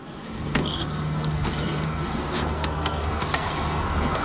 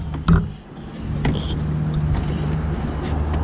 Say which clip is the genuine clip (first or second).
second